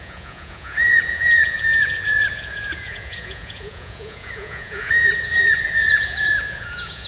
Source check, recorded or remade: remade